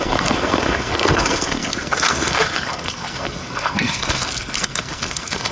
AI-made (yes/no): yes